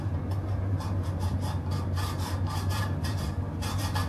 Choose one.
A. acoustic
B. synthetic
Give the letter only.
B